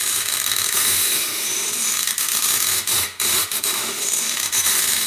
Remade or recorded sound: remade